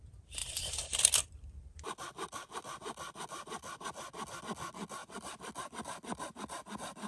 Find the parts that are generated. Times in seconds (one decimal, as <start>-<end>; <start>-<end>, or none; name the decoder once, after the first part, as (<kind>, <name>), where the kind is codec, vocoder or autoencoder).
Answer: 0.4-4.4 (vocoder, BigVGAN v2); 5.0-7.1